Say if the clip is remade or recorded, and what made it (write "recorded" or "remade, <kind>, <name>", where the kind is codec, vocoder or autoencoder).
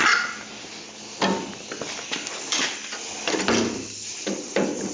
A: recorded